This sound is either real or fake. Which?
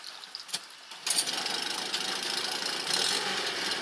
real